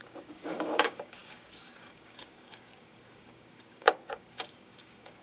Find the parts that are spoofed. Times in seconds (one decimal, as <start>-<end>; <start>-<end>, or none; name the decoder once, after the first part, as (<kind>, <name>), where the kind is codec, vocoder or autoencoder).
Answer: 0.0-5.2 (codec, DAC)